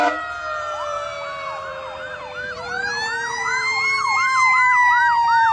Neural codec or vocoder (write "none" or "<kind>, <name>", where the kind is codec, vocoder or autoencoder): vocoder, BigVGAN v2